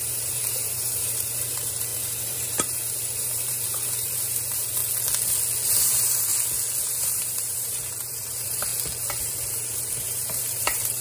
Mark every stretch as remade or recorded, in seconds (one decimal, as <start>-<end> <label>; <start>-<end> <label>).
0.0-4.8 remade; 4.8-5.7 recorded; 5.7-6.3 remade; 6.3-6.8 recorded; 6.8-8.7 remade; 8.7-9.2 recorded; 9.2-11.0 remade

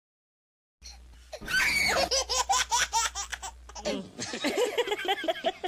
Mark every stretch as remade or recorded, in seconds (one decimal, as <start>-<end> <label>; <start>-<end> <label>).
0.0-5.7 recorded

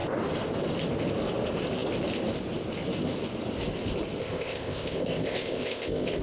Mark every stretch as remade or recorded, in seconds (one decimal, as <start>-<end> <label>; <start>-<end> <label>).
0.0-4.2 recorded; 4.2-6.2 remade

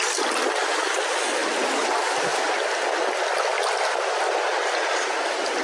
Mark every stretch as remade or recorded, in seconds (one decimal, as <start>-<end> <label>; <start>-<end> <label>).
0.0-5.6 recorded

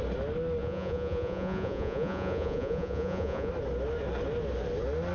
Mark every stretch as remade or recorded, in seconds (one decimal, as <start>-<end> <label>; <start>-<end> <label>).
0.0-0.6 recorded; 0.6-3.5 remade; 3.5-5.1 recorded

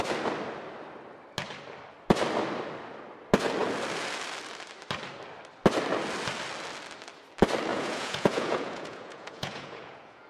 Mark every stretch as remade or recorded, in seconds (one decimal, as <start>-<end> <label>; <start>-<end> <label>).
0.0-7.7 recorded; 7.7-10.3 remade